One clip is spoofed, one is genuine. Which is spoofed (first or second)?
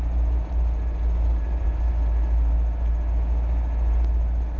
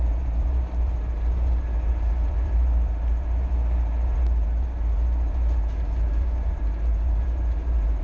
second